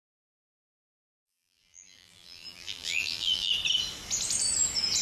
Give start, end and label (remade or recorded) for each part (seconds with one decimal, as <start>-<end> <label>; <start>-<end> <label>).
0.0-1.1 recorded; 1.1-3.5 remade; 3.5-5.0 recorded